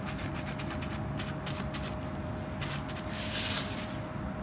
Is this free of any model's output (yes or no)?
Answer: yes